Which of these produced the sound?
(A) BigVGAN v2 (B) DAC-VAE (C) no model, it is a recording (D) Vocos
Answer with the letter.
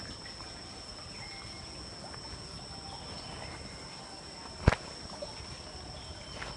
C